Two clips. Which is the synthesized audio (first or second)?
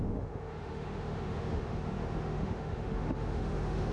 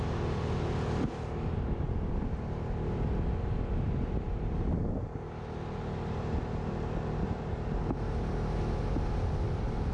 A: first